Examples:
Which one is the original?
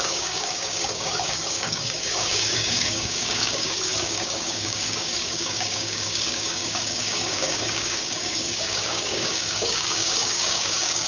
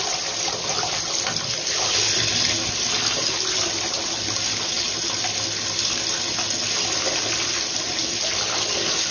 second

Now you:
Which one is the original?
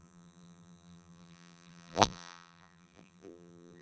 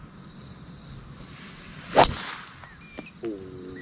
second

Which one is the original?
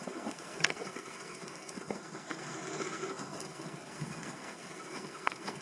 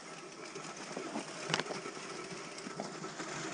second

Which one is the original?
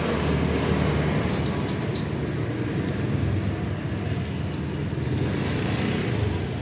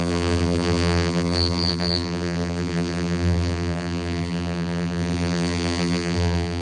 first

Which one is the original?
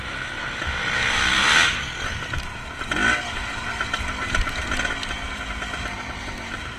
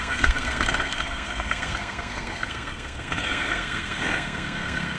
first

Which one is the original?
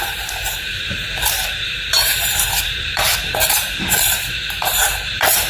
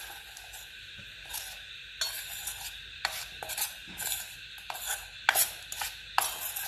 second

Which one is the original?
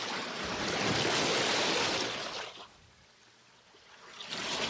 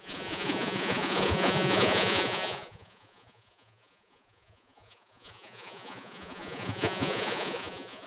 first